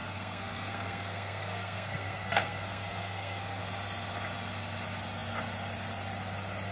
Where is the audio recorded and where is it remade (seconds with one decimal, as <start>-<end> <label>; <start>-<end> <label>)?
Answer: 0.0-3.6 remade; 3.6-6.7 recorded